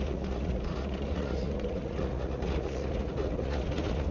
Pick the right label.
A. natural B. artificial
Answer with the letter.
B